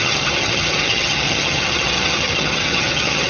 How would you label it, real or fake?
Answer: fake